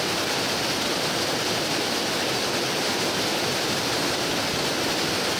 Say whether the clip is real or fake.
real